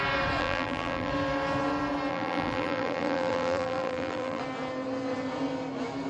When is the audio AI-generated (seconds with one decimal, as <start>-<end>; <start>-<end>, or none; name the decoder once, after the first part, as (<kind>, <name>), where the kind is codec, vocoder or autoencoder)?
0.4-1.1 (vocoder, BigVGAN v2); 2.1-4.4

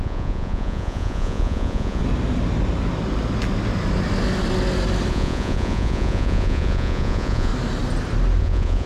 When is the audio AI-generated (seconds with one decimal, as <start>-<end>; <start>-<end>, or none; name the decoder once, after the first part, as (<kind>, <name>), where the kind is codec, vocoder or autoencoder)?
0.0-2.0 (vocoder, Vocos); 5.1-7.5; 8.4-8.9

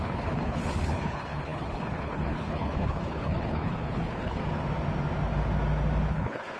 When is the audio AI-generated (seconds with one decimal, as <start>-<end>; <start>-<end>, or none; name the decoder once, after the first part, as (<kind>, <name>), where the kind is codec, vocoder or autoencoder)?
0.0-4.4 (codec, HILCodec); 6.1-6.6

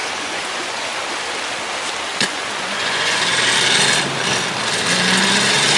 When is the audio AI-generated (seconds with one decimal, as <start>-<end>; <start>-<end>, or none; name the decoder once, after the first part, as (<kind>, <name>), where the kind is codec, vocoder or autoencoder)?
0.0-1.0 (vocoder, Vocos); 2.1-3.2

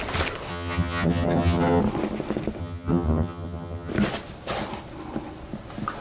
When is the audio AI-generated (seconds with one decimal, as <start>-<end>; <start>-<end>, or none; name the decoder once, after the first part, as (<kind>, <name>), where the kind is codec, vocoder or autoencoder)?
0.5-1.8 (vocoder, HiFi-GAN); 2.6-3.9

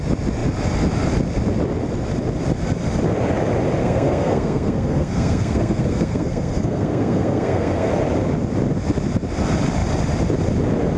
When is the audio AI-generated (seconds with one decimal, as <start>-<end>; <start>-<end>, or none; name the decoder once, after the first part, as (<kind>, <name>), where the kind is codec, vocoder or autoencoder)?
3.8-7.9 (codec, SNAC)

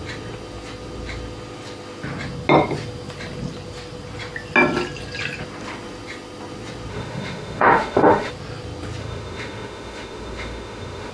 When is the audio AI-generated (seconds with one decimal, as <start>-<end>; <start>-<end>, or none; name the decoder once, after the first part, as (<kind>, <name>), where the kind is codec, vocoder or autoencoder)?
6.9-8.3 (autoencoder, DAC-VAE); 9.0-11.1